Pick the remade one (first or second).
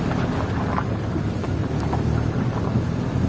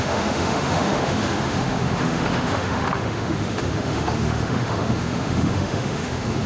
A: second